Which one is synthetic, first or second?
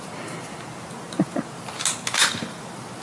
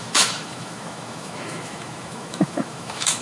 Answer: second